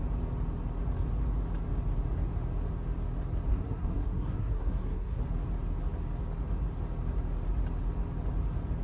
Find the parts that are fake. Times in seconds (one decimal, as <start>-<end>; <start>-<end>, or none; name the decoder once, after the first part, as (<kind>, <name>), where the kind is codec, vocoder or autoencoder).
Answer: 3.5-5.2 (codec, SNAC)